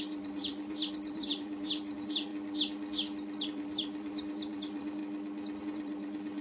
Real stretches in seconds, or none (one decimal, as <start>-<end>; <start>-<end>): 2.3-3.4; 5.0-5.6

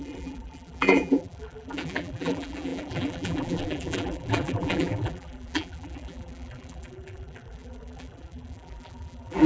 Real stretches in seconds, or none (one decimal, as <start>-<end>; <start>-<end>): none

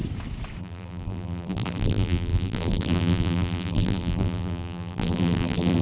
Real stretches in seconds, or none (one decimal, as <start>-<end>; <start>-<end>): 0.0-0.6

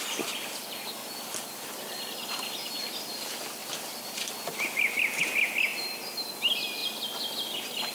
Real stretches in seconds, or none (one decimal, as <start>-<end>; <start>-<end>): 0.0-5.7; 6.3-7.9

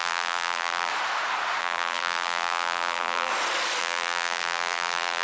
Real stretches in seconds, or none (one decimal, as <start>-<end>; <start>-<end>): 0.9-1.6; 3.3-3.8

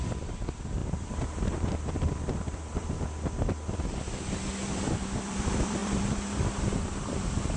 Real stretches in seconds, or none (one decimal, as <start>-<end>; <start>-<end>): none